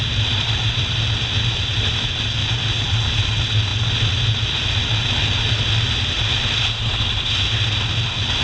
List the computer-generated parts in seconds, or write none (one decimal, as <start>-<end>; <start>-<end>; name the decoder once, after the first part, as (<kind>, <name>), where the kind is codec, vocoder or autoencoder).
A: none